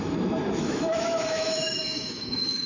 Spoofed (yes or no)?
yes